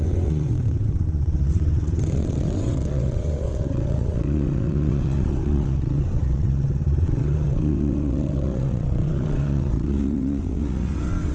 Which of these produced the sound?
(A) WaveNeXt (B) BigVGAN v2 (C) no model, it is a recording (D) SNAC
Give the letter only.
A